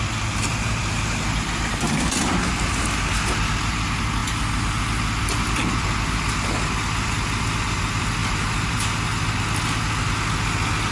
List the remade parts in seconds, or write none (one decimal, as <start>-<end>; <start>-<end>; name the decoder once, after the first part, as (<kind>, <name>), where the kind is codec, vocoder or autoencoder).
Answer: 0.5-3.5 (vocoder, BigVGAN v2); 8.2-8.7